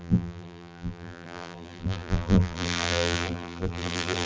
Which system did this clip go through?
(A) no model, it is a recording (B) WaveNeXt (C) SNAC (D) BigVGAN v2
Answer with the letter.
D